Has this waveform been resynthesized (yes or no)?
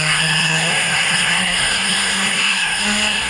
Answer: yes